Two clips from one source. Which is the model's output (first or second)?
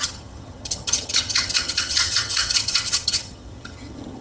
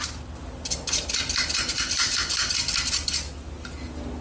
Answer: first